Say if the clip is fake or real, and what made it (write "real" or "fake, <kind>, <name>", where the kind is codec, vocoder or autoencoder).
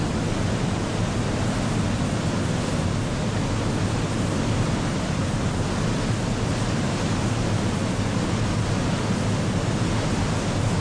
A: real